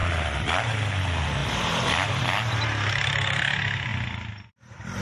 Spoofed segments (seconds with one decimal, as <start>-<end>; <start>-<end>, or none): none